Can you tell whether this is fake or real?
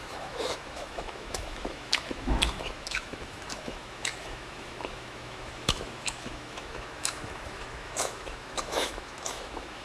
fake